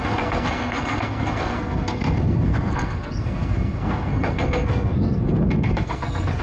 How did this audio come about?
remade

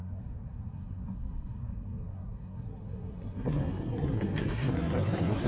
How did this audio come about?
remade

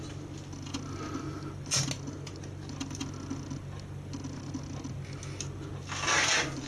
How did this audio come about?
recorded